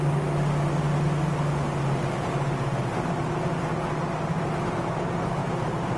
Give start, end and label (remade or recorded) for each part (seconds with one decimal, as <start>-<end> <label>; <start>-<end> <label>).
0.0-6.0 recorded